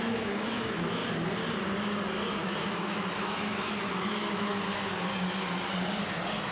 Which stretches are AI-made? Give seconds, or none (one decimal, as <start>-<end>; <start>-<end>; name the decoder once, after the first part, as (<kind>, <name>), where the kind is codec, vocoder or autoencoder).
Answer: 0.0-1.0 (autoencoder, DAC-VAE); 2.4-4.5